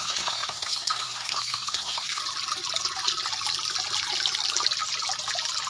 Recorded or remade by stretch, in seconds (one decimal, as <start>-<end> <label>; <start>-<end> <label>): 0.0-2.2 remade; 2.2-5.7 recorded